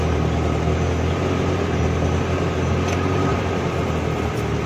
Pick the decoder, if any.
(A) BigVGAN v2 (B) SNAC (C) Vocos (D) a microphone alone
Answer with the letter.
D